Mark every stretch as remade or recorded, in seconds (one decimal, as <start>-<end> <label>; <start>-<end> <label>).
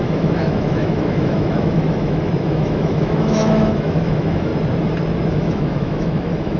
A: 0.0-4.5 remade; 4.5-5.3 recorded; 5.3-6.6 remade